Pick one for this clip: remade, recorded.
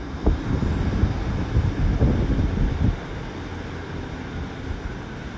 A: recorded